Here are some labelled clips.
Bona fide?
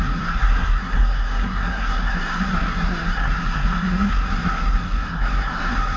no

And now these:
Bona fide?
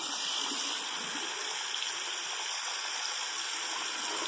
yes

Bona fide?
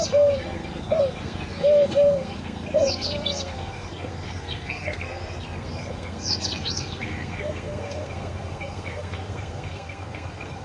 no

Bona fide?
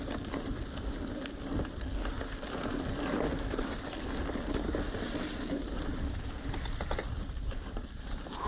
no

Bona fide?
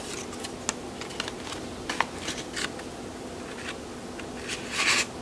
yes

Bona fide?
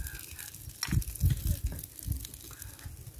yes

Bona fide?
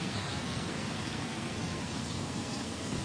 no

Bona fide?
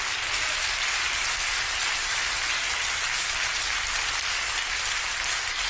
yes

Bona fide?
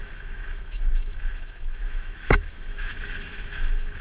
no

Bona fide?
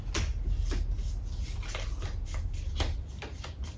yes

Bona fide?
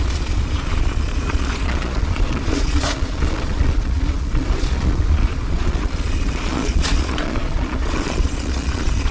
no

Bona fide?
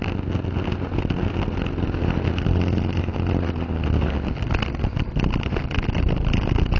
yes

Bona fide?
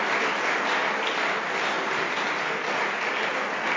yes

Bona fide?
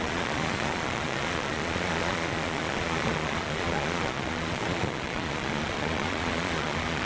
no